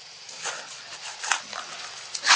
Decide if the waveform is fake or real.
real